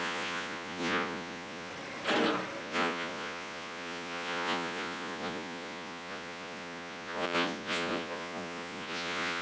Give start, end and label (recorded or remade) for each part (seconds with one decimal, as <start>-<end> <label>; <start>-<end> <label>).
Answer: 0.0-1.7 remade; 1.7-2.6 recorded; 2.6-9.4 remade